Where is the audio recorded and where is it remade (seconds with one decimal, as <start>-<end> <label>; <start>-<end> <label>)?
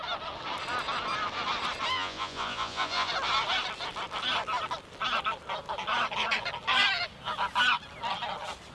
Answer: 0.0-1.9 recorded; 1.9-3.1 remade; 3.1-8.7 recorded